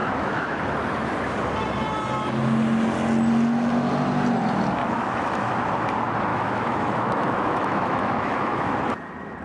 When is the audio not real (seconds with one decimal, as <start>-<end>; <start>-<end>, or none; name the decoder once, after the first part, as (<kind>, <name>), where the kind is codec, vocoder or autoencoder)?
0.0-0.6 (autoencoder, DAC-VAE); 4.8-5.5; 6.3-8.7